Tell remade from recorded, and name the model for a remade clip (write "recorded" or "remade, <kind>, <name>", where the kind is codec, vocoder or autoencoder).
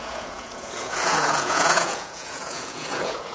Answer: remade, vocoder, Vocos